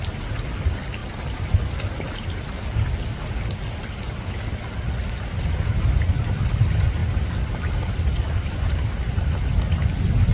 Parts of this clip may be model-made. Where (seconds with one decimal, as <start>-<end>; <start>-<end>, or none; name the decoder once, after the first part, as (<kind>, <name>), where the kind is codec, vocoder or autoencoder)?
none